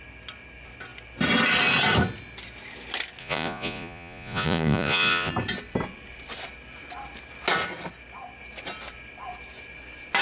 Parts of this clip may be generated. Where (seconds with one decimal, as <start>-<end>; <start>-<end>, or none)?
3.2-5.3